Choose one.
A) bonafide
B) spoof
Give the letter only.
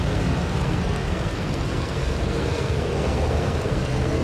B